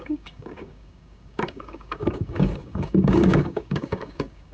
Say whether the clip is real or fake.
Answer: fake